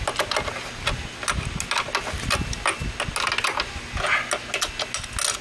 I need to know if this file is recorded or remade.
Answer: recorded